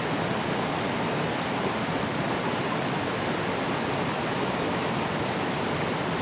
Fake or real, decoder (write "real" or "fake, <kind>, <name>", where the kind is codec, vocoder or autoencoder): real